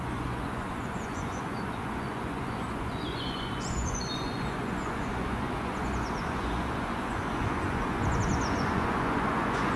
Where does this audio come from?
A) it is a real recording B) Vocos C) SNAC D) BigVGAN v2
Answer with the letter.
B